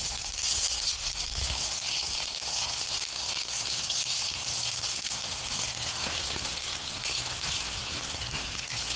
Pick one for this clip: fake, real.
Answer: fake